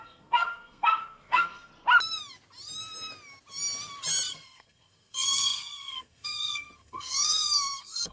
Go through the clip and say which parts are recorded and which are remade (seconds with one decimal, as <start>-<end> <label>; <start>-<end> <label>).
0.0-1.7 remade; 1.7-4.3 recorded; 4.3-8.1 remade

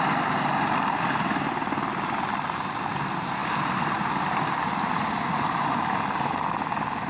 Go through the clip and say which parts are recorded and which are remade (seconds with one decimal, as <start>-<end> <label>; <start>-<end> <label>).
0.0-7.1 recorded

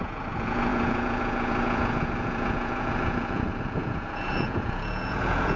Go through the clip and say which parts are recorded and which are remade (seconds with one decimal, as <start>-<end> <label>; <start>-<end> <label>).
0.0-5.6 remade

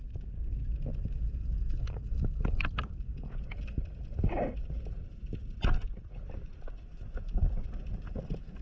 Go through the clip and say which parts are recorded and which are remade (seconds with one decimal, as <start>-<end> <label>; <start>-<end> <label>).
0.0-8.6 recorded

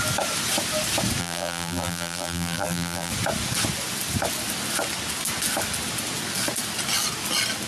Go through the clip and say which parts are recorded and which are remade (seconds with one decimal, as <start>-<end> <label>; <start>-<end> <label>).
0.0-1.2 recorded; 1.2-3.1 remade; 3.1-7.7 recorded

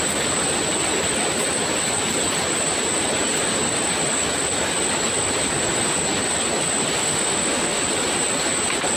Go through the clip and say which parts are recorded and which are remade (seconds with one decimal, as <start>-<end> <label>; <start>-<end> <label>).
0.0-7.0 recorded; 7.0-7.8 remade; 7.8-9.0 recorded

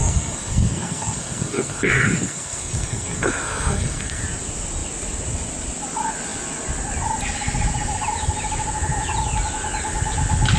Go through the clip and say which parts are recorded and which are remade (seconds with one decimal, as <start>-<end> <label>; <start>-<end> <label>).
0.0-4.2 remade; 4.2-10.6 recorded

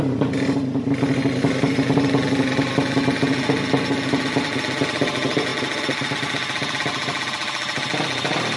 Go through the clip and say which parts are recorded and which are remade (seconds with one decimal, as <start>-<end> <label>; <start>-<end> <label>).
0.0-8.6 recorded